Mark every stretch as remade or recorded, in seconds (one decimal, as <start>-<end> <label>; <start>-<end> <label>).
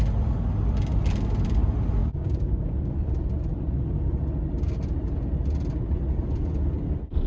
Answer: 0.0-2.0 recorded; 2.0-2.9 remade; 2.9-7.3 recorded